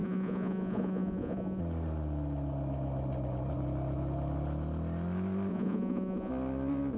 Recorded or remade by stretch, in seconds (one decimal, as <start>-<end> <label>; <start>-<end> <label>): 0.0-1.6 remade; 1.6-5.5 recorded; 5.5-6.3 remade; 6.3-7.0 recorded